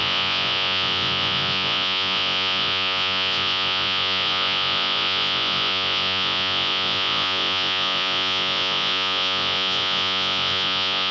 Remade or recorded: remade